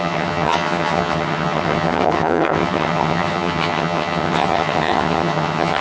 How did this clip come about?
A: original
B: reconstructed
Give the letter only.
B